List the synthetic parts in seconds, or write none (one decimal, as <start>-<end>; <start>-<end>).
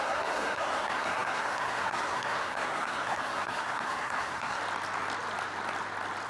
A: 0.0-4.6